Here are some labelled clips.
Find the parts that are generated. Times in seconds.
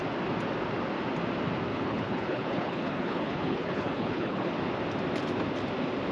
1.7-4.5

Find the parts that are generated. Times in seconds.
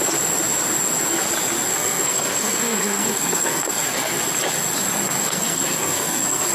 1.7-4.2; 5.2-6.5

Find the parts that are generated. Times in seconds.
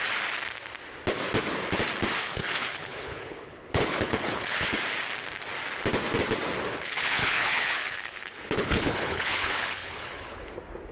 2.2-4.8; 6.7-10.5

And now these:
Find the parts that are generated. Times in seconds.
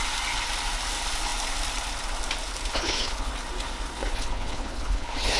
2.7-3.3; 4.0-5.4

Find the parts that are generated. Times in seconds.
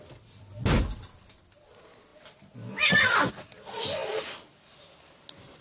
none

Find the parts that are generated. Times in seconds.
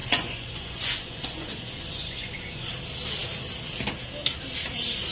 0.0-2.7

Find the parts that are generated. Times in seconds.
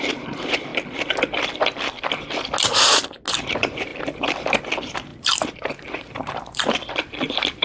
0.0-0.7; 3.3-7.6